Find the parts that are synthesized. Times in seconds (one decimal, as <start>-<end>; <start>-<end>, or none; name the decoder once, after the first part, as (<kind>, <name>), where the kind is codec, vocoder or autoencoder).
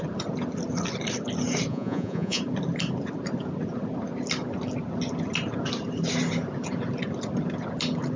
1.7-2.4 (vocoder, Vocos)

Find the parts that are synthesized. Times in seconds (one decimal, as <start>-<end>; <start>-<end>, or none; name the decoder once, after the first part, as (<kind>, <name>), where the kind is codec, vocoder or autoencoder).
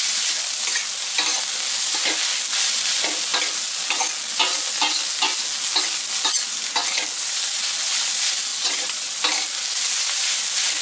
8.5-9.2 (vocoder, Vocos)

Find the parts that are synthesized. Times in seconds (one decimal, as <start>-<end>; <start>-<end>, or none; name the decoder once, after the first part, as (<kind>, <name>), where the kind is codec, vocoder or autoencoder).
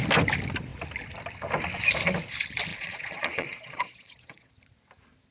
2.7-4.5 (vocoder, Vocos)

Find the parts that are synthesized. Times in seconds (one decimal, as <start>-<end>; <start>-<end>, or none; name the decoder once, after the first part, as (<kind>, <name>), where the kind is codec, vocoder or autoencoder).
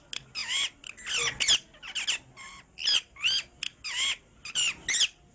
none